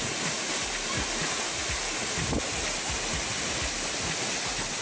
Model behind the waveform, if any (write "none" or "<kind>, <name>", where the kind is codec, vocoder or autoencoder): none